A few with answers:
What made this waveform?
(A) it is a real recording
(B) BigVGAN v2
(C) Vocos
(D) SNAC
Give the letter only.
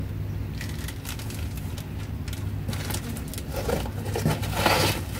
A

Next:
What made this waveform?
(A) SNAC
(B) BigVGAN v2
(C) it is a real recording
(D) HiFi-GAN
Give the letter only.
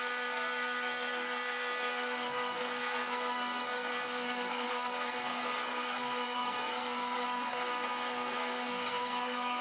A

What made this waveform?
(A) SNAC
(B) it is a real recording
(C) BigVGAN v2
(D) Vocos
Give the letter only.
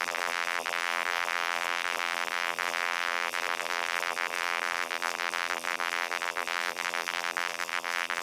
C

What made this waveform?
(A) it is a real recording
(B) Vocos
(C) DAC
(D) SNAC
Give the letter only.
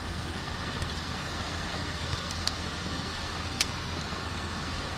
D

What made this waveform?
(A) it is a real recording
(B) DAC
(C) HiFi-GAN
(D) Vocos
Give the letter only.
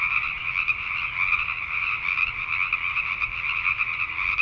A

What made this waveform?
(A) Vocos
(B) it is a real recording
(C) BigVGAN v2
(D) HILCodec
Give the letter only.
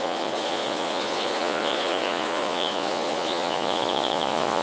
A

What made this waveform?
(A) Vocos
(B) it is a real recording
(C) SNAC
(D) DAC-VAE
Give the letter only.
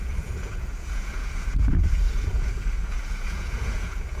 A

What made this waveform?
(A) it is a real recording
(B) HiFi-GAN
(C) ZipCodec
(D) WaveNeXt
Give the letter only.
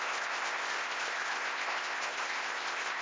C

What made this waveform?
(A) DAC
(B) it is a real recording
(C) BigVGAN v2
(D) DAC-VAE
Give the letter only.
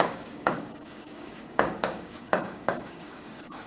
A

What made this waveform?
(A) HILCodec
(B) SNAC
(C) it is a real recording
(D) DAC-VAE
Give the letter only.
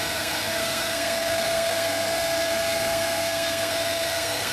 B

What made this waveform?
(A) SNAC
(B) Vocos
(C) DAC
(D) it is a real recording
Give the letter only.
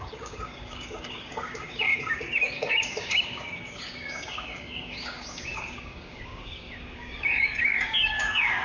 C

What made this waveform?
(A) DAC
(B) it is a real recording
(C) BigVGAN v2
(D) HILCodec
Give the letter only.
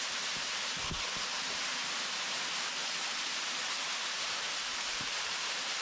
C